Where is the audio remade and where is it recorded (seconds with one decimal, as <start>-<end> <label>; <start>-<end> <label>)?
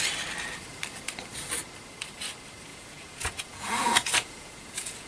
0.0-2.7 recorded; 2.7-5.1 remade